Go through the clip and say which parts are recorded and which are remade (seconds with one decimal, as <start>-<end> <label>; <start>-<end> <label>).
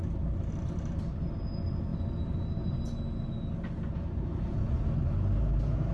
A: 0.0-5.9 recorded